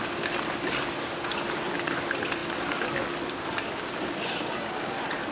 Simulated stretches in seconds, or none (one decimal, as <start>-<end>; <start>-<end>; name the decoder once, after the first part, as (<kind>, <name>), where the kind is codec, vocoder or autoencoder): none